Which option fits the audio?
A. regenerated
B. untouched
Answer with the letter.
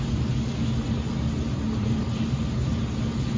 B